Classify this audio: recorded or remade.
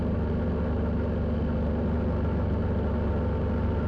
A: recorded